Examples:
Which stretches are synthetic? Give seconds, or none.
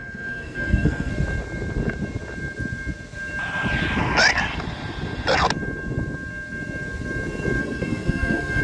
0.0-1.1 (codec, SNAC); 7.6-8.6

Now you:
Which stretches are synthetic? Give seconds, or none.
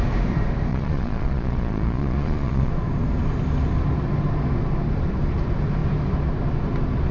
0.7-2.7 (vocoder, Vocos)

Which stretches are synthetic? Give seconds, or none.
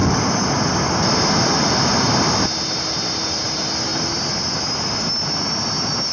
none